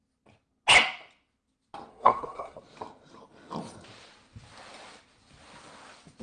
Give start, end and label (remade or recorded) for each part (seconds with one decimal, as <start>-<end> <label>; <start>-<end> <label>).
0.0-1.9 recorded; 1.9-2.6 remade; 2.6-6.2 recorded